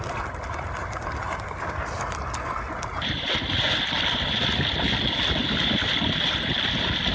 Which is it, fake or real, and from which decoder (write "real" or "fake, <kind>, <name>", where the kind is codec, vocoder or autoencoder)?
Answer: real